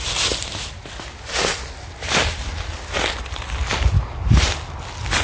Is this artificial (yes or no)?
no